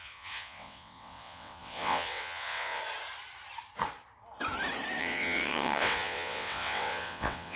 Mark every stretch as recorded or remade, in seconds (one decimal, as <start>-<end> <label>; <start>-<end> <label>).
0.0-2.8 remade; 2.8-5.0 recorded; 5.0-7.6 remade